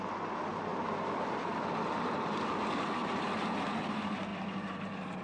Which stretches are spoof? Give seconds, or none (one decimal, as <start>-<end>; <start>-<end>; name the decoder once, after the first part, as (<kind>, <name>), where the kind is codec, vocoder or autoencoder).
4.3-4.8 (vocoder, BigVGAN v2)